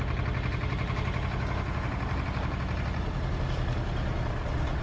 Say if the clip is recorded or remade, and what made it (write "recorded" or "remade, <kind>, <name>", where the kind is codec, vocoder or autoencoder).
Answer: recorded